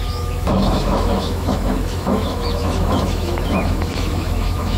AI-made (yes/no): yes